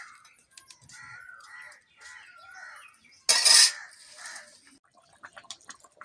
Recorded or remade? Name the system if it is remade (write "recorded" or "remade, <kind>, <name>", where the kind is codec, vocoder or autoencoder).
recorded